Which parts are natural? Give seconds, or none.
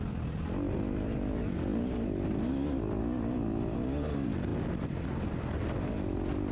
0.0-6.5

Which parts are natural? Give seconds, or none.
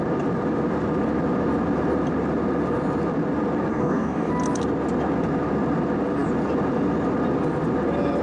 0.0-3.7; 4.3-8.2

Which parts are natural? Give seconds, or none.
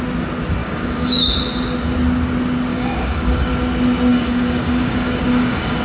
0.0-0.6; 1.3-2.7; 3.5-4.1